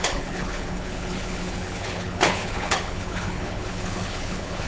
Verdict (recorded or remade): remade